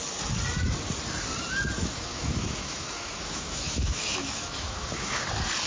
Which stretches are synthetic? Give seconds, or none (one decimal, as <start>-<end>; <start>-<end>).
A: 1.8-5.2